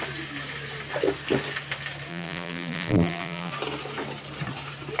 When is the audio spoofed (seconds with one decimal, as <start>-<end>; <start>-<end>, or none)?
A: 2.1-3.5